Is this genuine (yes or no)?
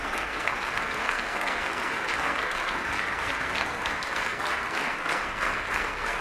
no